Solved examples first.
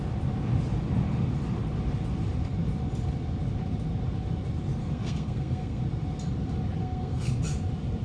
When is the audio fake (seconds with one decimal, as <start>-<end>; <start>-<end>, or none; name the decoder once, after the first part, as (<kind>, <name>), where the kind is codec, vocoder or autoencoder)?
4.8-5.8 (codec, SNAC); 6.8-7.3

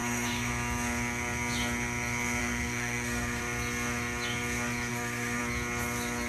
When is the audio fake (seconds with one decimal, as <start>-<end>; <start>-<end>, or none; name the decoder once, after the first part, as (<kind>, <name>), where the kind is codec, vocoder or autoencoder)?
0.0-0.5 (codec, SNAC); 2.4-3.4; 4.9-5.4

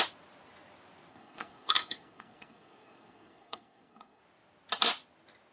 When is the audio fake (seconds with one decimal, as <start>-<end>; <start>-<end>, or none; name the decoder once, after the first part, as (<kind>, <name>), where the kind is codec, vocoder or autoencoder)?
1.1-4.2 (codec, SNAC)

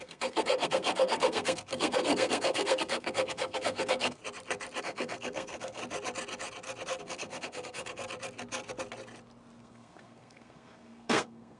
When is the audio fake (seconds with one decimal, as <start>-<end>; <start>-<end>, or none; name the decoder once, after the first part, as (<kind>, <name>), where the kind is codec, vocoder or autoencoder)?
0.0-4.2 (codec, SNAC); 4.8-5.8; 7.0-8.0; 9.6-11.6